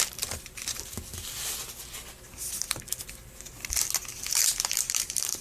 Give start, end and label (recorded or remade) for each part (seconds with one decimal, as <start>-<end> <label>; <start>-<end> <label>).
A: 0.0-1.1 remade; 1.1-4.3 recorded; 4.3-5.4 remade